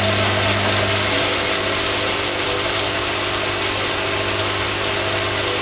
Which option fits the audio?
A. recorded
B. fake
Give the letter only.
A